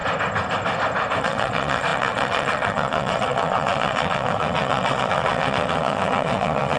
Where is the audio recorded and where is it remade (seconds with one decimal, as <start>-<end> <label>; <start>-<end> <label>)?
0.0-1.2 recorded; 1.2-6.8 remade

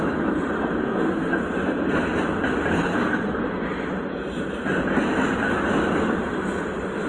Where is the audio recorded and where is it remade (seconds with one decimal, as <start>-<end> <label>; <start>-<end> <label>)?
0.0-0.8 recorded; 0.8-1.4 remade; 1.4-2.7 recorded; 2.7-3.4 remade; 3.4-7.1 recorded